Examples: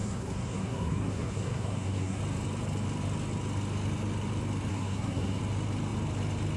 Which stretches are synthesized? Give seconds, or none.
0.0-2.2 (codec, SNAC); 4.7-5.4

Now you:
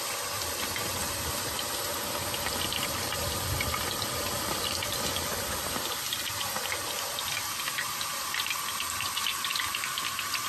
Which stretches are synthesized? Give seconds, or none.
none

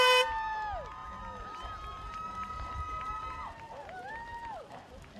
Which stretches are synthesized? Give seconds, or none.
none